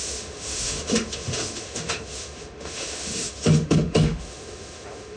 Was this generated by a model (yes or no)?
yes